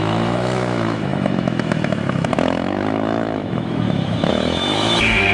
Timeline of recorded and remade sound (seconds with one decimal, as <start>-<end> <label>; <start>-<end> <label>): 0.0-5.3 remade